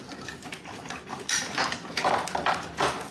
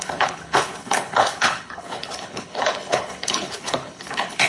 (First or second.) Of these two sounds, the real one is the first